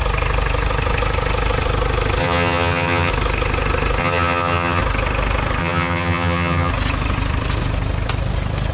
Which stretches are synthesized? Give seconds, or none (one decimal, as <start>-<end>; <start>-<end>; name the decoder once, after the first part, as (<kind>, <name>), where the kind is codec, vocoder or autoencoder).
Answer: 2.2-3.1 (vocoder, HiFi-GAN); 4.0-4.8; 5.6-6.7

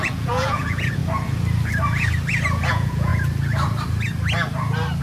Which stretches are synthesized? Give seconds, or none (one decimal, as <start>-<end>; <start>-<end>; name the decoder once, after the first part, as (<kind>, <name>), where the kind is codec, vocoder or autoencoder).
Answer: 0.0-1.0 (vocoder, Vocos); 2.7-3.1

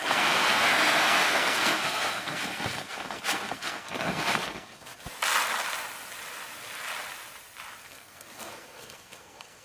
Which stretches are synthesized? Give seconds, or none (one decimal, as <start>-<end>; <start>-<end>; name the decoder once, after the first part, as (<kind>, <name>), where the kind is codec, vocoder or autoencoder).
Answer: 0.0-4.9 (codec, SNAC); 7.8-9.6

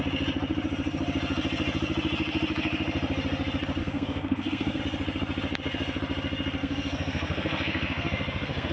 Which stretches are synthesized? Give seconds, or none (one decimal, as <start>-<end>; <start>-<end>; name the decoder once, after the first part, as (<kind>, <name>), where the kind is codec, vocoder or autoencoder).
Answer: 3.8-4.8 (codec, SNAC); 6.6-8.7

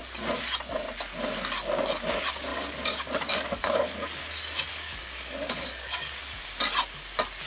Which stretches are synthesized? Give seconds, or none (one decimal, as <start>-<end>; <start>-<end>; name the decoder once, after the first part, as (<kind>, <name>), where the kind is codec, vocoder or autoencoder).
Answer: 2.5-4.2 (codec, DAC); 4.7-6.2

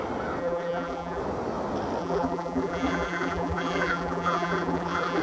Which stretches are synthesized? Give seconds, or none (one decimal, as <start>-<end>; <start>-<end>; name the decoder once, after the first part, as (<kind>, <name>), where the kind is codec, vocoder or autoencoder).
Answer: 0.4-1.2 (vocoder, BigVGAN v2); 2.0-5.2

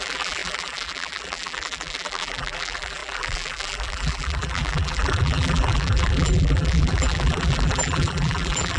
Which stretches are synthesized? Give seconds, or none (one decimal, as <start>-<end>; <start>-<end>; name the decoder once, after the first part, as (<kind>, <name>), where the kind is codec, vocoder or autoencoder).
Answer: 0.0-8.8 (vocoder, BigVGAN v2)